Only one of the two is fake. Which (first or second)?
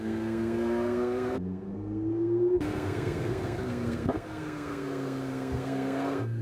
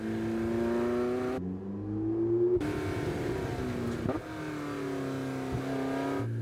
first